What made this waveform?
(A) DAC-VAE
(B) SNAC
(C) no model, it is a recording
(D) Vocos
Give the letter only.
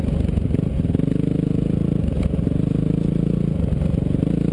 C